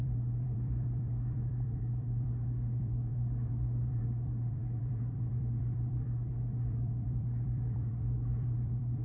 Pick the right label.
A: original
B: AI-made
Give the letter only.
B